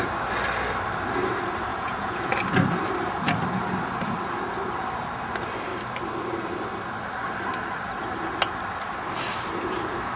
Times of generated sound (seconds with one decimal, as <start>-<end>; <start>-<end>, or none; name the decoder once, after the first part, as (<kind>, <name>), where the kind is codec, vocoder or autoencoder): 1.7-2.3 (vocoder, Vocos)